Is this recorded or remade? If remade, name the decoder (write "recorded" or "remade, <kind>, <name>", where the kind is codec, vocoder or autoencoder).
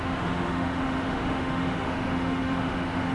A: remade, autoencoder, DAC-VAE